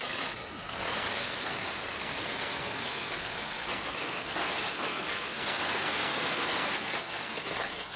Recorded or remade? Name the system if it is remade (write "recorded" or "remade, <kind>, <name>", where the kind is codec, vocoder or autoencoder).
remade, codec, SNAC